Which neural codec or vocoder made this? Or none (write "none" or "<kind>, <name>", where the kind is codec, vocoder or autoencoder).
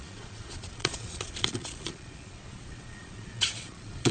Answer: vocoder, Vocos